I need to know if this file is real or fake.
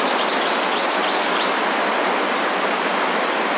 real